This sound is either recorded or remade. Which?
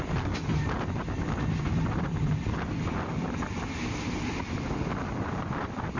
recorded